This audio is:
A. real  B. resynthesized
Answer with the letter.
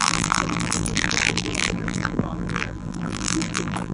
B